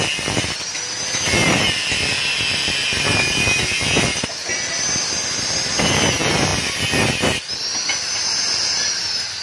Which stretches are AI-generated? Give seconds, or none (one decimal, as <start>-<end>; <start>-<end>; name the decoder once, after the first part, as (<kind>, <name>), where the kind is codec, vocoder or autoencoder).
none